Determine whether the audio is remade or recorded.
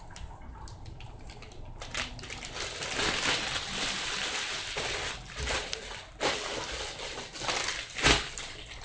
recorded